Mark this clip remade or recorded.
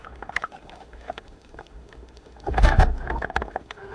remade